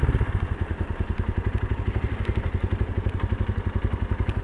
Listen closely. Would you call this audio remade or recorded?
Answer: recorded